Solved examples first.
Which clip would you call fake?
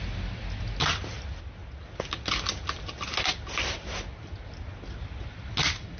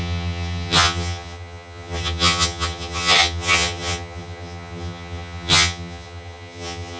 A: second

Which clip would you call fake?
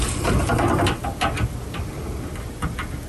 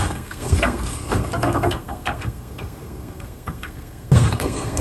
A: second